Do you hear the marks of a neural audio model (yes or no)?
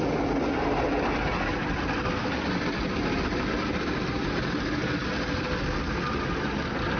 no